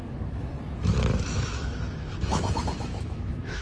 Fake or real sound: fake